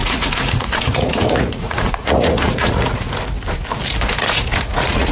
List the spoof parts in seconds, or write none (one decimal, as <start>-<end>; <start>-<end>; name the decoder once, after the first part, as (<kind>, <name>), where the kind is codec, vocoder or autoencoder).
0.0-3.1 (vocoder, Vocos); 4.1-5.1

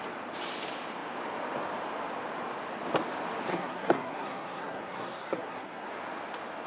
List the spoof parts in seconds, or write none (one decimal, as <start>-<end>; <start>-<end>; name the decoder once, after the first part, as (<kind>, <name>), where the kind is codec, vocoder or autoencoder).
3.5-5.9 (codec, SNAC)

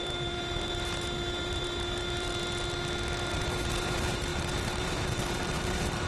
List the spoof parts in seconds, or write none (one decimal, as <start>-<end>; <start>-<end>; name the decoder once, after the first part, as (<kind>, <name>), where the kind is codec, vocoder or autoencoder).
0.0-2.3 (vocoder, BigVGAN v2); 3.3-6.1

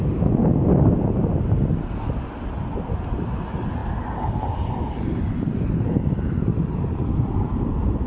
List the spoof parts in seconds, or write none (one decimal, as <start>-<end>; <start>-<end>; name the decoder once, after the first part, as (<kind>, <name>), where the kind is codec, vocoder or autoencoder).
none